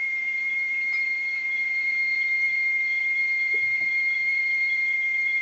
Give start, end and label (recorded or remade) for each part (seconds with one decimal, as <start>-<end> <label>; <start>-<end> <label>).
0.0-5.4 remade